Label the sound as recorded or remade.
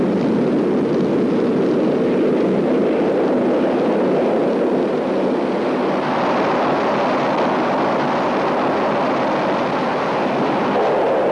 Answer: recorded